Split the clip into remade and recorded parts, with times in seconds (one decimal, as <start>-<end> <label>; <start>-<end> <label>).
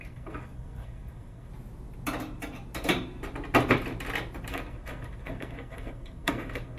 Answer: 0.0-1.5 remade; 1.5-4.5 recorded; 4.5-6.8 remade